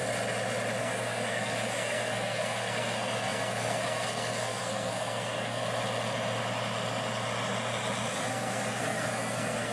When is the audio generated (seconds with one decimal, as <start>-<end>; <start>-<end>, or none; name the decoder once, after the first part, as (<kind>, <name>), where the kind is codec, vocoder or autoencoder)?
0.8-5.6 (codec, SNAC); 8.3-9.7